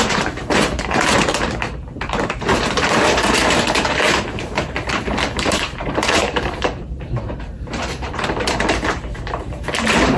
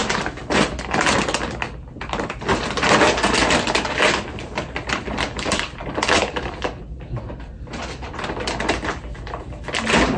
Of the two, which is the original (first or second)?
second